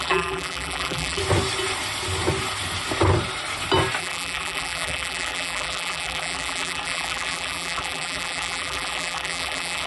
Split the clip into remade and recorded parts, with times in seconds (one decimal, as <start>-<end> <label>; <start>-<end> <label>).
0.0-1.2 remade; 1.2-4.0 recorded; 4.0-9.9 remade

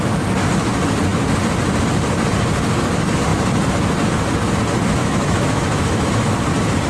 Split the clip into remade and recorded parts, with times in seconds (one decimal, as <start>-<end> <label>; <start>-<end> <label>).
0.0-5.0 recorded; 5.0-6.1 remade; 6.1-6.9 recorded

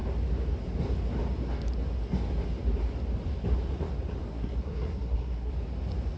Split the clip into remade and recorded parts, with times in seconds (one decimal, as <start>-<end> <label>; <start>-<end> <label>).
0.0-4.3 recorded; 4.3-5.5 remade; 5.5-6.2 recorded

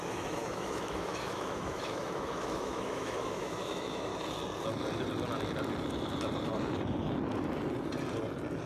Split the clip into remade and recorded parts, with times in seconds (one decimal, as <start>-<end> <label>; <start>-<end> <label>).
0.0-4.1 remade; 4.1-8.7 recorded

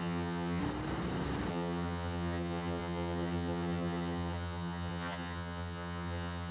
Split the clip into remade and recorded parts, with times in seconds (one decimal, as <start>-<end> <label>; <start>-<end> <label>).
0.0-0.6 remade; 0.6-1.5 recorded; 1.5-6.5 remade

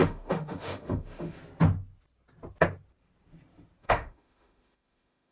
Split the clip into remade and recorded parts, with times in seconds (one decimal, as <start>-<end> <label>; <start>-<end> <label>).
0.0-1.4 remade; 1.4-3.8 recorded; 3.8-5.3 remade

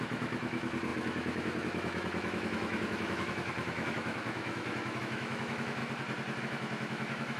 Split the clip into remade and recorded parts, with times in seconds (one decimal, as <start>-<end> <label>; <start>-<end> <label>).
0.0-5.8 remade; 5.8-6.4 recorded; 6.4-7.4 remade